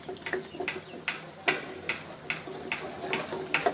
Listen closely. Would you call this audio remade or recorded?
recorded